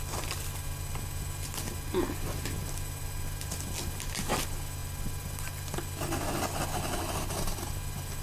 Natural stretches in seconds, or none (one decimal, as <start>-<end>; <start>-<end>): 0.0-8.2

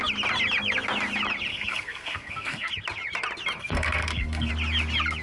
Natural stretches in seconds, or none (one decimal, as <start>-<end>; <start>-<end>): 0.0-1.5; 2.7-3.6; 4.5-5.2

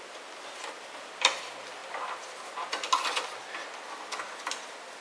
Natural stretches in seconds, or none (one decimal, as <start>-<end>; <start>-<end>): 0.0-5.0

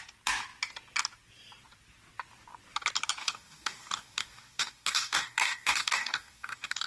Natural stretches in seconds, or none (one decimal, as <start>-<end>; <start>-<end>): 0.0-3.2

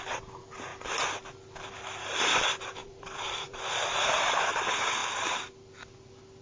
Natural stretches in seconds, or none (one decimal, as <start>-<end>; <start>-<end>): 0.0-2.8; 4.5-6.4

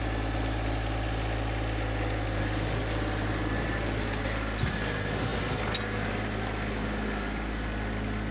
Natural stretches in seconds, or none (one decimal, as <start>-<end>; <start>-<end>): 0.0-8.3